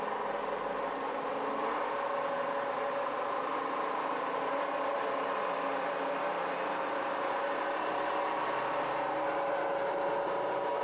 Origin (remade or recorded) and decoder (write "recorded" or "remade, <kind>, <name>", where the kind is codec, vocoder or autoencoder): recorded